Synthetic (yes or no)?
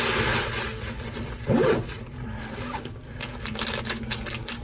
no